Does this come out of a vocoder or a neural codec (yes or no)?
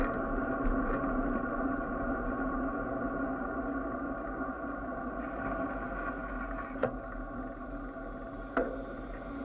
no